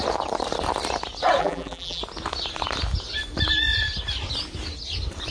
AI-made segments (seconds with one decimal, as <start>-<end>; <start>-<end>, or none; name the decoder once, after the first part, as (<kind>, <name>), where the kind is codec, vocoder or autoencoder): 1.4-2.0 (vocoder, BigVGAN v2)